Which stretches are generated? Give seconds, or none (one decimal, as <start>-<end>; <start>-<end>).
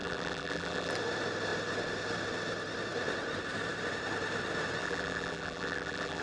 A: 0.0-0.9; 4.8-6.2